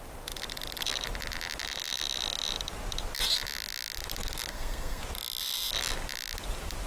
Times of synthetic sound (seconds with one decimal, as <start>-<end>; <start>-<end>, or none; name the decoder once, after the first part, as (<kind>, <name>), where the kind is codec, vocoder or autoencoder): 4.5-5.0 (codec, SNAC)